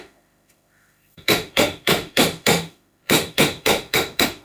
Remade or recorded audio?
remade